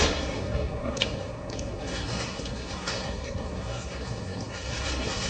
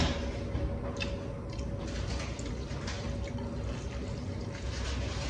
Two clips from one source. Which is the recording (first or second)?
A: second